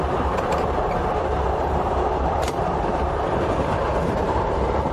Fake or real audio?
fake